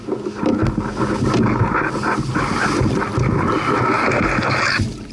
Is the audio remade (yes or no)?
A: no